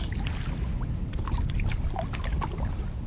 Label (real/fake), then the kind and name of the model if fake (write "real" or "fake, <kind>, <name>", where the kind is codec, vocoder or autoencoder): real